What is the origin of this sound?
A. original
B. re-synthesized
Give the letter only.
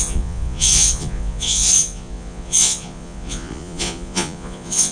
B